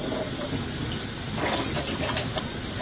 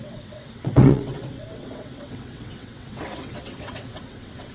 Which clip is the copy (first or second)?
second